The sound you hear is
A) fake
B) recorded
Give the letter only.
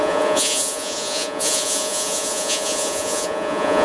A